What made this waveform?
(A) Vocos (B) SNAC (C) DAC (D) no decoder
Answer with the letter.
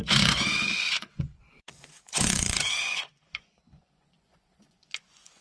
A